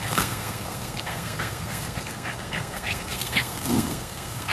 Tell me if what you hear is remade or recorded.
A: remade